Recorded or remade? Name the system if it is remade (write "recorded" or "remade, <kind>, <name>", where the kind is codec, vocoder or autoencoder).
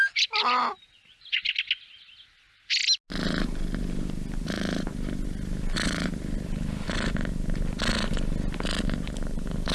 recorded